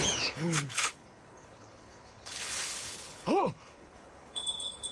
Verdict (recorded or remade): remade